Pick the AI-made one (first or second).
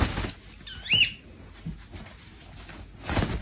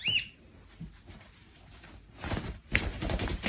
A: second